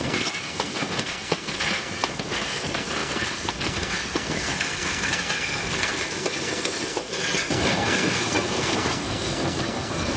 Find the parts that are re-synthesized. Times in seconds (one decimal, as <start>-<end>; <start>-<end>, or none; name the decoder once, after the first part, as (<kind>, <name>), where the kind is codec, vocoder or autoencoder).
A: 0.0-10.2 (codec, SNAC)